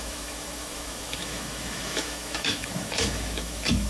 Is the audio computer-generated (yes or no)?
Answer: yes